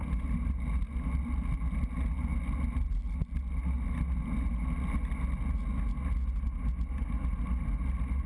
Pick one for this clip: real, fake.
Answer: real